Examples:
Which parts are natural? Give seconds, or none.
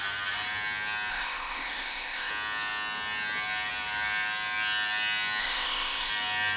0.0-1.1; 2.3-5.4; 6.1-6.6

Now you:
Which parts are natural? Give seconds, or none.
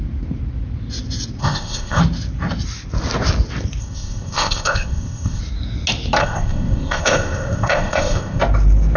0.0-1.4; 2.0-3.8; 5.4-6.2; 8.4-9.0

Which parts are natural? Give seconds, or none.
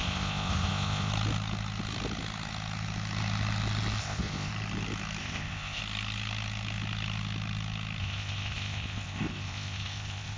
1.1-4.0; 4.5-5.2; 5.8-8.0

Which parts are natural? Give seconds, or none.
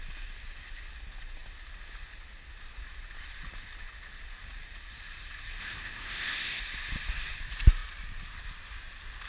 0.0-5.6; 6.6-9.3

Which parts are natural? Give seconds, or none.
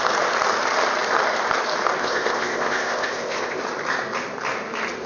0.0-2.0; 3.6-5.1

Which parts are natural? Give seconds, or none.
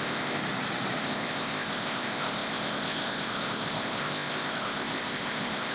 0.4-1.0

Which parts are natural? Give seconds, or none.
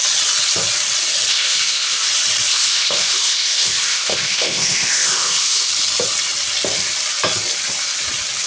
0.0-1.3; 2.1-2.5; 5.7-8.5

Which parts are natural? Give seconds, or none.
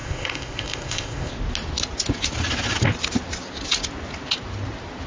1.3-5.1